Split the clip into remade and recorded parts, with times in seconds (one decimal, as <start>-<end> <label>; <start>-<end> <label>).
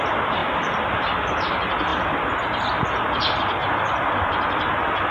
0.0-0.4 recorded; 0.4-1.5 remade; 1.5-1.9 recorded; 1.9-3.2 remade; 3.2-5.1 recorded